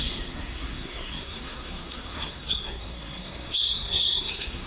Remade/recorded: remade